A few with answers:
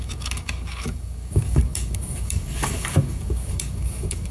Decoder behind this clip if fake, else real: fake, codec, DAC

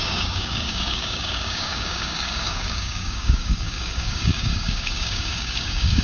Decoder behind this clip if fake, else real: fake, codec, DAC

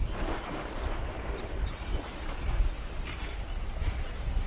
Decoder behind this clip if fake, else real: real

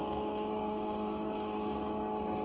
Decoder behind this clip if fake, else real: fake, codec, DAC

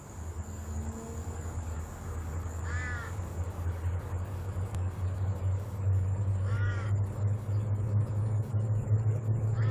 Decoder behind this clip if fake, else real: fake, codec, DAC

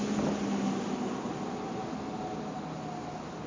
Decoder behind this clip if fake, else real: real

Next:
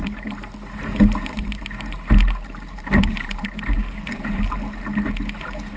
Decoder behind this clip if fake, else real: real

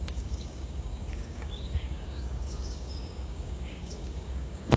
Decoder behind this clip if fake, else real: fake, codec, DAC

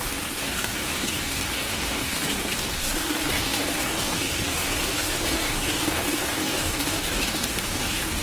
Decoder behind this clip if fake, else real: fake, codec, DAC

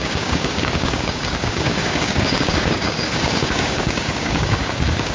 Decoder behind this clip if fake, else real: fake, codec, DAC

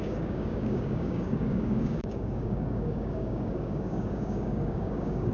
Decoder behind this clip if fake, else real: fake, codec, DAC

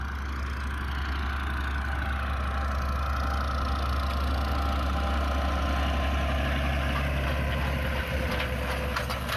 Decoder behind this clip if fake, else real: real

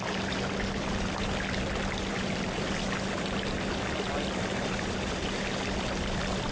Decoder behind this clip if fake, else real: real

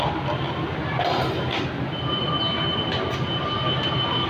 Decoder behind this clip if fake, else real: real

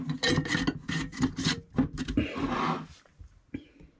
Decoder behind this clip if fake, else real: real